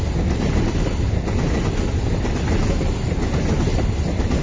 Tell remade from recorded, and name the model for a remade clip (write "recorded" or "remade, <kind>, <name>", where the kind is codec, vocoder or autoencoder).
recorded